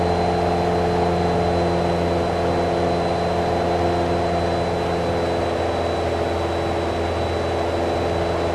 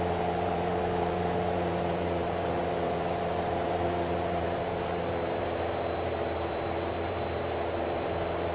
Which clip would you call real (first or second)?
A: first